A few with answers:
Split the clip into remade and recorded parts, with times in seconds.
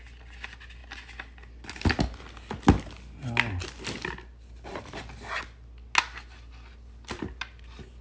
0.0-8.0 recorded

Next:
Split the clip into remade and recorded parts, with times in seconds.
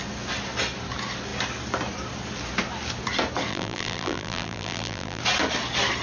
0.0-3.5 recorded; 3.5-5.2 remade; 5.2-6.0 recorded